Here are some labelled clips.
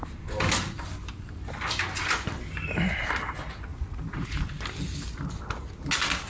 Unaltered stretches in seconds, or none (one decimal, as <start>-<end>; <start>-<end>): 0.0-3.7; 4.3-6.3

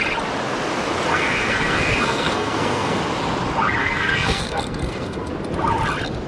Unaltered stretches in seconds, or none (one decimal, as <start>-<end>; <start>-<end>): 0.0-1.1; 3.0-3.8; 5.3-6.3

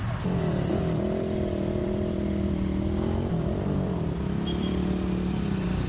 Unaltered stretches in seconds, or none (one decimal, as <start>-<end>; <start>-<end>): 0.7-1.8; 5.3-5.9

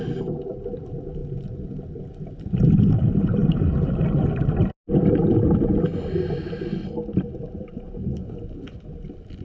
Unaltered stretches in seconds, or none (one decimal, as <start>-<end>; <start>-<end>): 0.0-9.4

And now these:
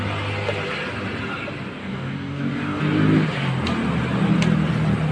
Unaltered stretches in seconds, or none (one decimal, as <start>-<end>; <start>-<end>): 0.0-1.8; 2.8-5.1

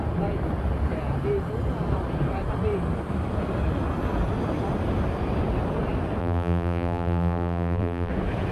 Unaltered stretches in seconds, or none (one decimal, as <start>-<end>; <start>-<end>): 0.0-6.2; 8.1-8.5